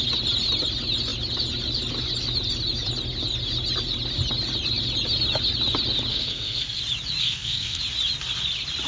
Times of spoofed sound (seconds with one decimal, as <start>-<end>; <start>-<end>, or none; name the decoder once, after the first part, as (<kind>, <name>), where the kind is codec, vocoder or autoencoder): 6.1-6.8 (codec, SNAC); 7.2-7.8